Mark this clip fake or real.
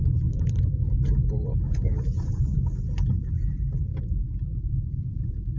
fake